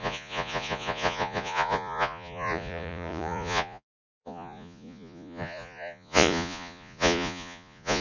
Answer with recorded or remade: remade